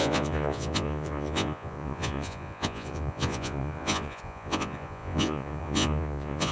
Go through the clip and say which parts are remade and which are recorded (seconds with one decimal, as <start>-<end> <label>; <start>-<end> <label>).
0.0-6.5 remade